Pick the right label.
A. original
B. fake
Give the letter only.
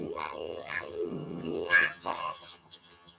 B